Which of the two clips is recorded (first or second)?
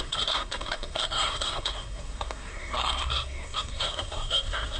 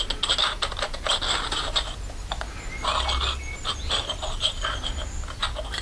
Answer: second